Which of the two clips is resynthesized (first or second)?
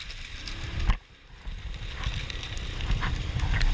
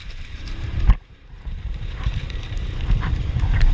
second